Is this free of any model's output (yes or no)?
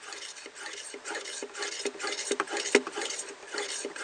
yes